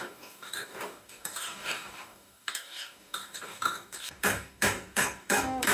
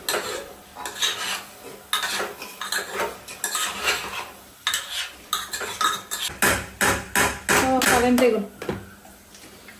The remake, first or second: first